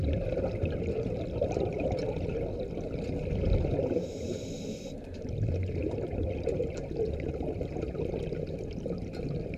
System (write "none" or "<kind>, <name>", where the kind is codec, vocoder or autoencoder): none